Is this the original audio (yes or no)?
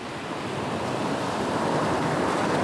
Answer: no